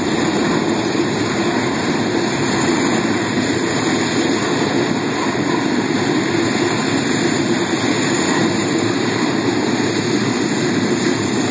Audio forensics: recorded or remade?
remade